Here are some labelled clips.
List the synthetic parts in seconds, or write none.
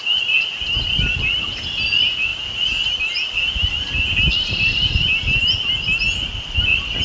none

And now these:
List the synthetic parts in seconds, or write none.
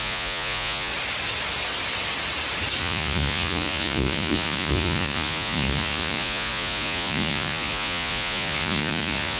0.0-0.9 (vocoder, Vocos); 2.8-9.4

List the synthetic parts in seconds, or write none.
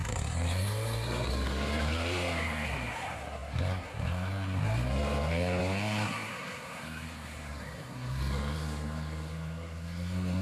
0.0-10.4 (codec, SNAC)